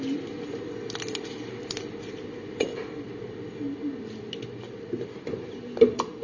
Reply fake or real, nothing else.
real